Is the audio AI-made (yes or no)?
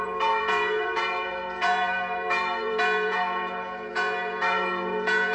yes